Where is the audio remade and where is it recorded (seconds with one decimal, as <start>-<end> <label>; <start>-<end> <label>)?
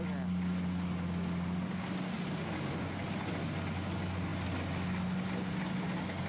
0.0-6.3 recorded